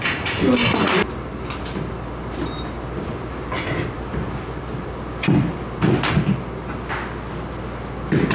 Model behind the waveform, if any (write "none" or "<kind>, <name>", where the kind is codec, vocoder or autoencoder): none